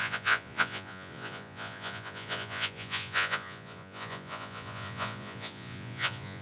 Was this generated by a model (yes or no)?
yes